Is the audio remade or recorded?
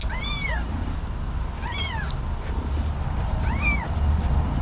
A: recorded